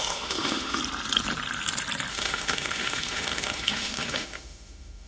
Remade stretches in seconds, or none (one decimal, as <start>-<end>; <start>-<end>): 0.0-0.8; 2.1-5.1